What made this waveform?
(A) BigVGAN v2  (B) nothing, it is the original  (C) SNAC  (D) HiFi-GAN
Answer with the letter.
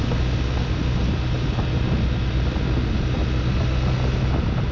B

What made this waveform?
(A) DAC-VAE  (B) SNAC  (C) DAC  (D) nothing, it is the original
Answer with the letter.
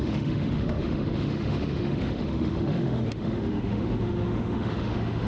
A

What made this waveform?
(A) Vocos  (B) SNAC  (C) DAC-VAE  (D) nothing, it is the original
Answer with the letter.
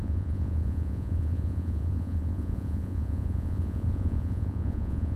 A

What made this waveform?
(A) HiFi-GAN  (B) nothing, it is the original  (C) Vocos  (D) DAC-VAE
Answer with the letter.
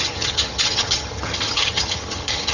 A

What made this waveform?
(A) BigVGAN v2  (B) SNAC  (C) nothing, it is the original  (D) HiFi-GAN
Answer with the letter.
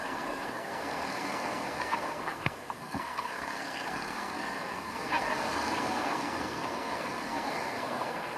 B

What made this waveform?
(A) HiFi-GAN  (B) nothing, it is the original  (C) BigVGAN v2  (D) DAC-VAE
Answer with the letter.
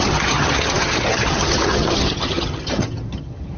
A